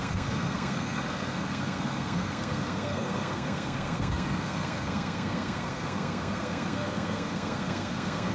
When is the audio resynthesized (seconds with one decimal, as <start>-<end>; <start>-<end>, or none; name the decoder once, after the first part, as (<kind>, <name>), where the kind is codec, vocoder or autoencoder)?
0.0-8.3 (codec, SNAC)